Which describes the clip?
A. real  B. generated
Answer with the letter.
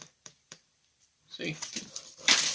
B